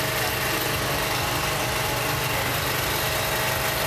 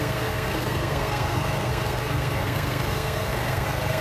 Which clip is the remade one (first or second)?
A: second